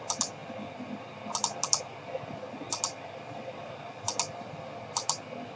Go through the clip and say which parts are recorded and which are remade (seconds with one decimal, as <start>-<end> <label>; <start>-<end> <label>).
0.0-5.6 recorded